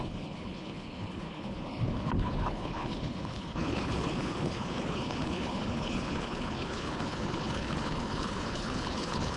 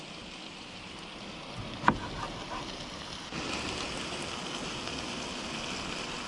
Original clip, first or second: second